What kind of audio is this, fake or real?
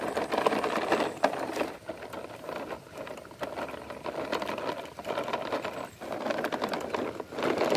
real